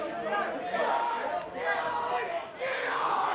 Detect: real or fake real